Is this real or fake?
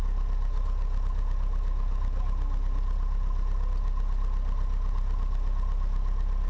real